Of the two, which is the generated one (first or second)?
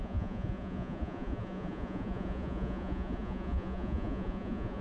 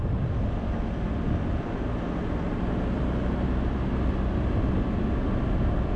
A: first